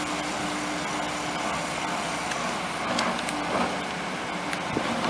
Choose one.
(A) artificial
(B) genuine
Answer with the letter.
B